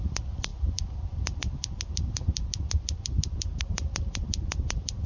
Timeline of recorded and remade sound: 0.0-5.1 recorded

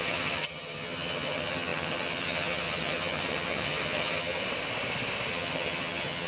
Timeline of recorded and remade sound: 0.0-4.4 remade; 4.4-5.3 recorded; 5.3-6.3 remade

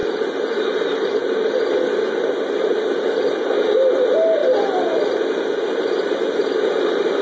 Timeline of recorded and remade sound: 0.0-7.2 recorded

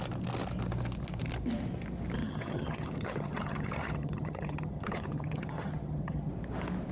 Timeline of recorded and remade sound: 0.0-2.2 recorded; 2.2-6.3 remade; 6.3-6.9 recorded